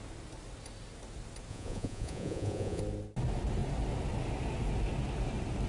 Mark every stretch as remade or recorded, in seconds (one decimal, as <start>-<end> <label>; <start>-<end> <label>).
0.0-1.5 recorded; 1.5-2.8 remade; 2.8-5.7 recorded